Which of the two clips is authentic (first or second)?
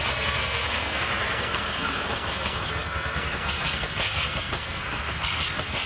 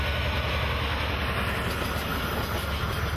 second